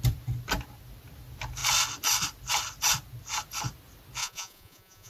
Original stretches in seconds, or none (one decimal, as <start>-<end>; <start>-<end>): 0.0-4.2

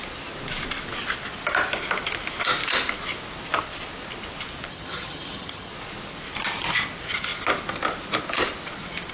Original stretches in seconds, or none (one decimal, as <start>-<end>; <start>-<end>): 0.0-4.7; 5.7-9.1